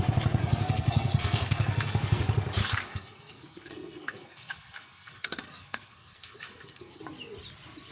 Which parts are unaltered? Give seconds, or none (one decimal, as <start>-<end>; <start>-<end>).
0.0-0.4; 2.2-2.6; 7.0-7.9